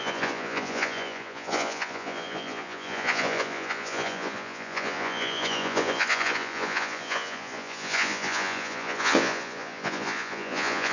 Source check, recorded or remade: remade